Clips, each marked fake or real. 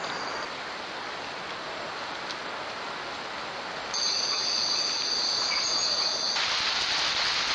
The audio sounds real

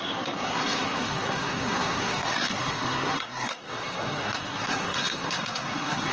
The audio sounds fake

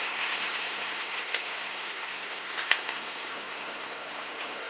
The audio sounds fake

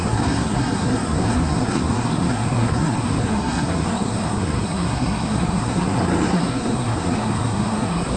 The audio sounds fake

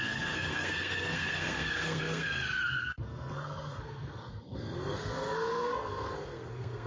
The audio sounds fake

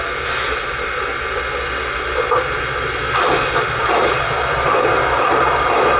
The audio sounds real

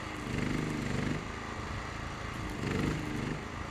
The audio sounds real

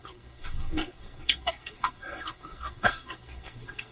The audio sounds fake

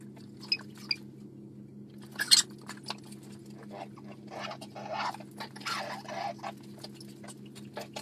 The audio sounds real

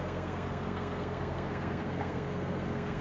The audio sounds fake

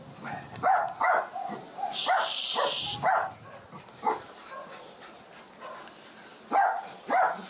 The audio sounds real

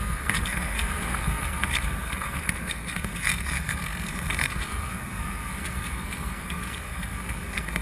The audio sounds fake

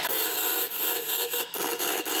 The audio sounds fake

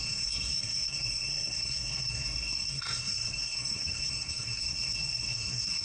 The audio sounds fake